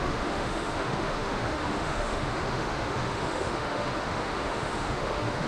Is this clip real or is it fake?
fake